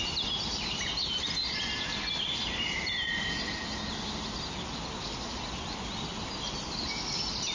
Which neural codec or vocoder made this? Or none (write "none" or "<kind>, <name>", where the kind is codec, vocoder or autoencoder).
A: none